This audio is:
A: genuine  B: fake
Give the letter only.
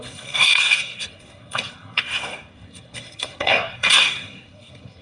B